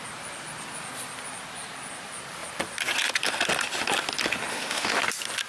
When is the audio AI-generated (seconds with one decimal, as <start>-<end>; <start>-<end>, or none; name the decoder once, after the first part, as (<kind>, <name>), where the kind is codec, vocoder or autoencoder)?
4.5-5.0 (autoencoder, DAC-VAE)